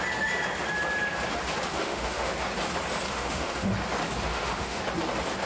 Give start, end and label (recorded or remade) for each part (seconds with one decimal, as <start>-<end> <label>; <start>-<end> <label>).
0.0-1.7 recorded; 1.7-2.3 remade; 2.3-3.1 recorded; 3.1-3.7 remade; 3.7-4.3 recorded; 4.3-4.8 remade; 4.8-5.5 recorded